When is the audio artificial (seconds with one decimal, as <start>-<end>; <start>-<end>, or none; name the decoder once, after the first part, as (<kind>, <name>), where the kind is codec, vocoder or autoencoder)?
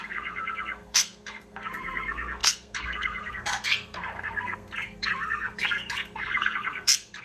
0.0-7.2 (codec, SNAC)